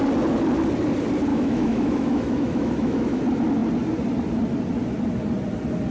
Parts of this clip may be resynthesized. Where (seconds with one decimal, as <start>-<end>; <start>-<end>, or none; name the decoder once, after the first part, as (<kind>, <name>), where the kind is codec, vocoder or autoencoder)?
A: 1.3-3.2 (autoencoder, DAC-VAE)